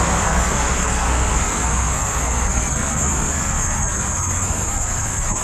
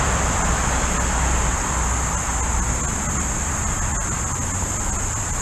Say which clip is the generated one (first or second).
first